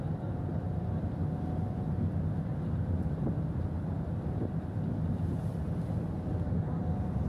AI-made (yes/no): no